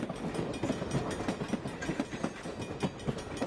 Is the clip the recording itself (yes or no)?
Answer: yes